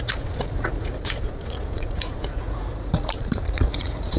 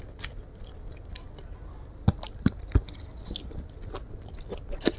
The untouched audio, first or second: second